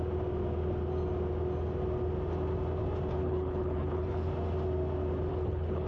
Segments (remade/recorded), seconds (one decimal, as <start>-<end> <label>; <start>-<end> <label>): 0.0-3.2 recorded; 3.2-4.3 remade; 4.3-5.3 recorded; 5.3-5.9 remade